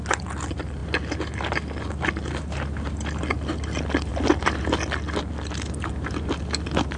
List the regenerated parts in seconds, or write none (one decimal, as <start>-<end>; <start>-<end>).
4.1-4.6